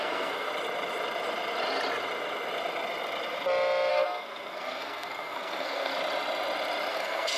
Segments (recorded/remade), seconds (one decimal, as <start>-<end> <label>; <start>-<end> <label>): 0.0-0.5 remade; 0.5-3.9 recorded; 3.9-5.9 remade; 5.9-6.9 recorded; 6.9-7.4 remade

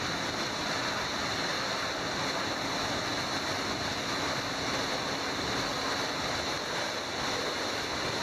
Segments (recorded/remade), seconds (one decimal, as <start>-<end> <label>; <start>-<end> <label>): 0.0-8.2 recorded

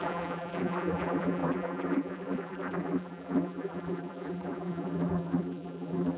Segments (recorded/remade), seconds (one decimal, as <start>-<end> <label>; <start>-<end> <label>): 0.0-6.2 remade

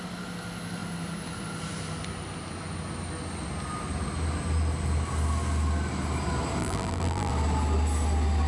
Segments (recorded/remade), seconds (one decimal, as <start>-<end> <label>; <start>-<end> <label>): 0.0-6.6 recorded; 6.6-7.3 remade; 7.3-8.5 recorded